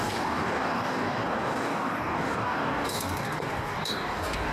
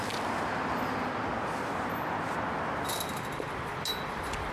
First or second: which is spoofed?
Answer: first